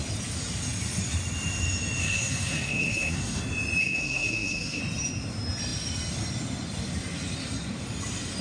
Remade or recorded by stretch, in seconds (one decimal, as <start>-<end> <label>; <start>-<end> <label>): 0.0-2.0 recorded; 2.0-3.4 remade; 3.4-3.8 recorded; 3.8-4.8 remade; 4.8-8.4 recorded

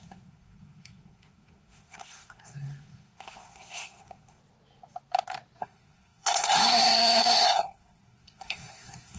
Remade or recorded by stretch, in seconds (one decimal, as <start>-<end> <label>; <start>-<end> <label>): 0.0-4.4 remade; 4.4-5.6 recorded; 5.6-9.2 remade

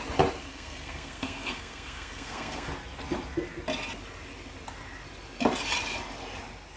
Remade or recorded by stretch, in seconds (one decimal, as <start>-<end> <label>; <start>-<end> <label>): 0.0-0.4 recorded; 0.4-2.7 remade; 2.7-6.8 recorded

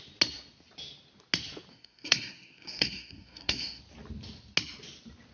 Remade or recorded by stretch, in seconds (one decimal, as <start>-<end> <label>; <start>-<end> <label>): 0.0-1.7 recorded; 1.7-3.8 remade; 3.8-5.3 recorded

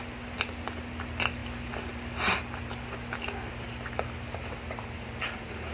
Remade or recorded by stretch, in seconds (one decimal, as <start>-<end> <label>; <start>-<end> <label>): 0.0-5.7 recorded

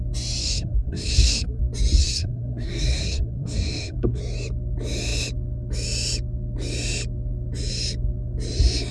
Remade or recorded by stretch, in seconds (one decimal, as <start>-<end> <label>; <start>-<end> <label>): 0.0-0.4 recorded; 0.4-1.6 remade; 1.6-2.0 recorded; 2.0-4.2 remade; 4.2-8.9 recorded